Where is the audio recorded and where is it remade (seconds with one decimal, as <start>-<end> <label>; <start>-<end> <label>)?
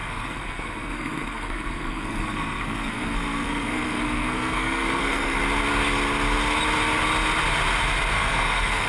0.0-5.4 remade; 5.4-8.1 recorded; 8.1-8.9 remade